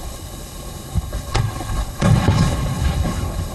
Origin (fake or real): fake